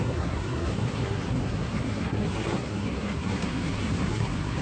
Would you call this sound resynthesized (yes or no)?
yes